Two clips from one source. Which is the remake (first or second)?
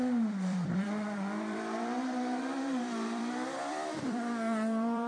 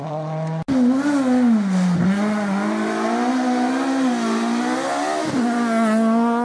first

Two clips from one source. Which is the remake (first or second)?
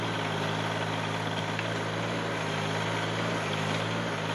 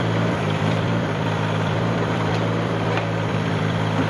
second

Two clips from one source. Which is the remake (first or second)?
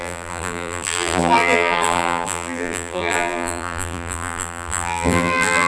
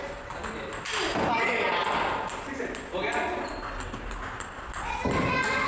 first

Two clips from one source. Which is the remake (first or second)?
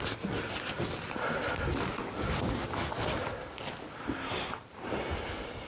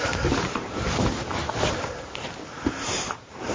second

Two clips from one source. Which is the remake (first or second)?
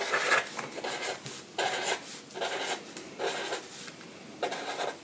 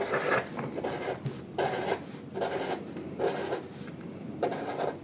second